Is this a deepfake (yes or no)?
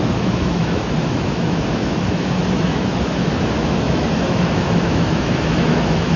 yes